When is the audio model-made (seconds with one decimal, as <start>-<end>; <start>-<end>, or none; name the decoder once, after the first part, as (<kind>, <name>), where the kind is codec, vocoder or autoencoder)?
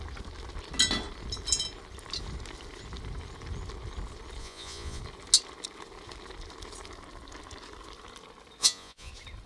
4.4-5.0 (vocoder, Vocos); 8.6-9.1